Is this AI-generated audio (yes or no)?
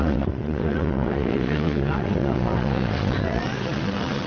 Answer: yes